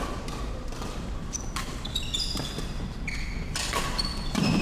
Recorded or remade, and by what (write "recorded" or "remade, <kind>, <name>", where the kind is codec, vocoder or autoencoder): remade, vocoder, BigVGAN v2